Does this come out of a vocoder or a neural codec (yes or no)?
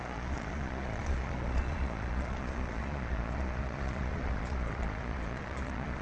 yes